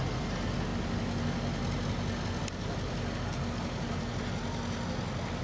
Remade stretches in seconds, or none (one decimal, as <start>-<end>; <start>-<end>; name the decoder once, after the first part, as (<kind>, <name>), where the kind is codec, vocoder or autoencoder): none